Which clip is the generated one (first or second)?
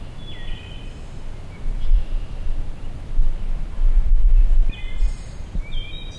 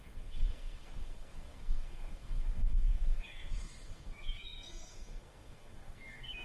second